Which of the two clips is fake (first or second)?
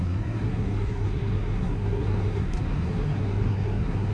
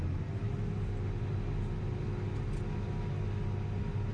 first